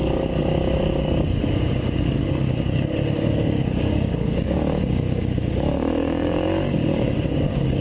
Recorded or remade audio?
remade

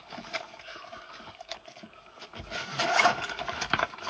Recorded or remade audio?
remade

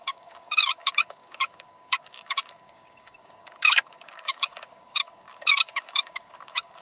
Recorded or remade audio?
remade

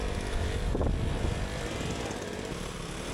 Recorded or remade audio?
recorded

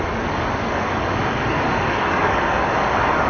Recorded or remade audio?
remade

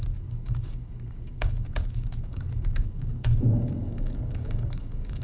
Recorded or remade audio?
remade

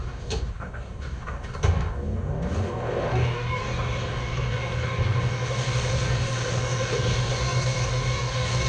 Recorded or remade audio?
remade